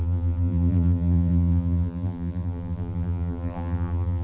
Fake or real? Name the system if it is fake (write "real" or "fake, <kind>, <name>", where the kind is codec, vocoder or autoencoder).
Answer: fake, vocoder, BigVGAN v2